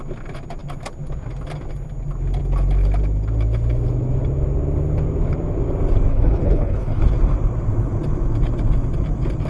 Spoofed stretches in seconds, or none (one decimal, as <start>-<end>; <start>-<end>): 6.1-7.0